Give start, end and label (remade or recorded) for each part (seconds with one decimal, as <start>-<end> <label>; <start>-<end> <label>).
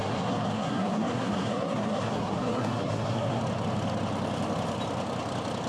0.0-3.4 remade; 3.4-5.7 recorded